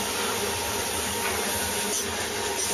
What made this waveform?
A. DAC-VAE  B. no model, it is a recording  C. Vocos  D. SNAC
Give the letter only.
B